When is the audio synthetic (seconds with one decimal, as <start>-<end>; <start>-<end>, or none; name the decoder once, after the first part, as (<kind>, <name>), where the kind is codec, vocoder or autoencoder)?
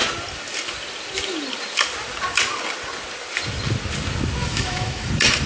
4.4-5.1 (autoencoder, DAC-VAE)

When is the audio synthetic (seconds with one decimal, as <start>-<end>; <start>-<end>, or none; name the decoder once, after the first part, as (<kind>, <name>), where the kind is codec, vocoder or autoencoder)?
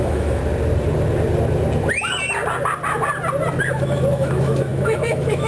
0.0-0.4 (autoencoder, DAC-VAE); 3.7-5.5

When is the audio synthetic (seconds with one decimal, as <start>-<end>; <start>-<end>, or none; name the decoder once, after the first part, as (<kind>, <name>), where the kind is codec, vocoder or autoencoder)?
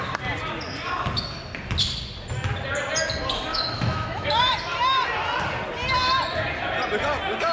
3.5-4.4 (autoencoder, DAC-VAE)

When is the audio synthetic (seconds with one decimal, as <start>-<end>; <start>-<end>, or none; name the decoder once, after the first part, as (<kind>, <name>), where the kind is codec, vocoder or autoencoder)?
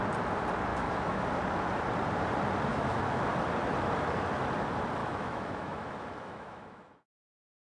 0.7-1.2 (autoencoder, DAC-VAE); 2.7-3.3; 5.0-7.1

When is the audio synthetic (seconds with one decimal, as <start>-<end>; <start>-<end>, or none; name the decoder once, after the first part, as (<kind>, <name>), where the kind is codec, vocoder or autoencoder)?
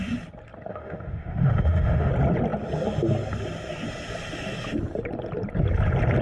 0.7-2.1 (autoencoder, DAC-VAE)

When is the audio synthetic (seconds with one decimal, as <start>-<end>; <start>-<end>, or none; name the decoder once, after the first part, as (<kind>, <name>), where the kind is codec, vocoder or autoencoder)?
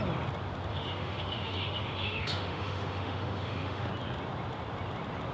0.7-3.9 (autoencoder, DAC-VAE)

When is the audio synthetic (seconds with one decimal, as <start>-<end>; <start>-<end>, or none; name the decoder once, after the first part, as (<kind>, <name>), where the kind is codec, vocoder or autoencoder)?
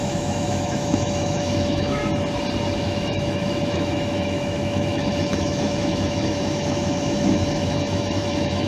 0.0-2.0 (autoencoder, DAC-VAE); 2.8-8.7